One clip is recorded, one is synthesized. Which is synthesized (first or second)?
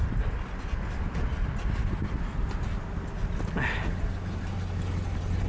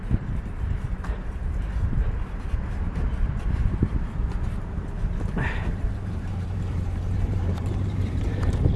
second